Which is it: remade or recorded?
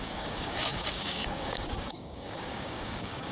remade